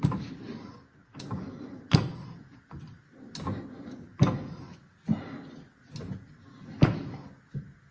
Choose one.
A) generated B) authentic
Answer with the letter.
B